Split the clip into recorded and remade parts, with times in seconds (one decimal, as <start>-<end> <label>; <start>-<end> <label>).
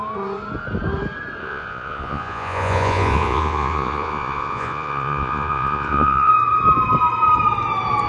0.0-1.4 recorded; 1.4-6.3 remade; 6.3-8.1 recorded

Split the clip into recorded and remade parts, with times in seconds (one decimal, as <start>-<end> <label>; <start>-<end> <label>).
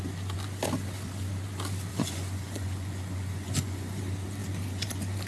0.0-1.9 recorded; 1.9-4.0 remade; 4.0-5.3 recorded